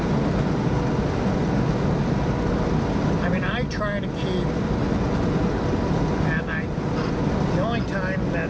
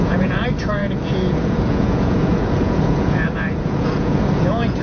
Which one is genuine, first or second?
first